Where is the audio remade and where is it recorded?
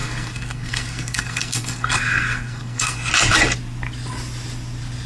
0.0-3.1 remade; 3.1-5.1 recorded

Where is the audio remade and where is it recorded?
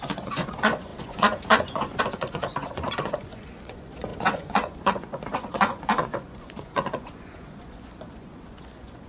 0.0-9.1 remade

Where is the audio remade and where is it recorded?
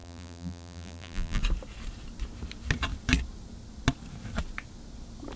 0.0-1.4 remade; 1.4-5.4 recorded